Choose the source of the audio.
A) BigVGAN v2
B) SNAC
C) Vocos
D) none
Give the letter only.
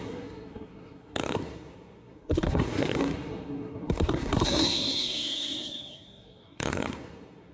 B